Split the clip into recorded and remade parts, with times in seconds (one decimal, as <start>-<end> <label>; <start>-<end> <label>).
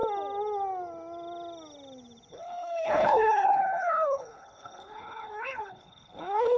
0.0-2.3 recorded; 2.3-6.6 remade